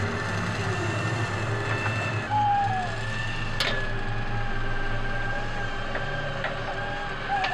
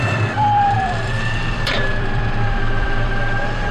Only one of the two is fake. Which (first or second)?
second